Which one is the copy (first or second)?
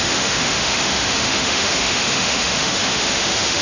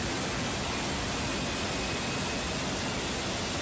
first